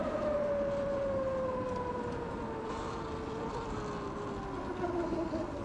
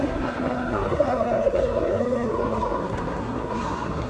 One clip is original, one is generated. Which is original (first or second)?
first